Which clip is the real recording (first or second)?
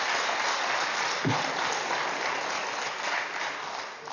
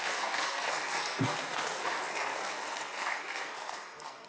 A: first